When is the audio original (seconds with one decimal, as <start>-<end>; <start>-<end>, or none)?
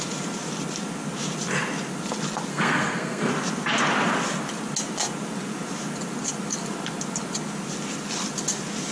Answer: 0.0-2.5; 3.3-8.9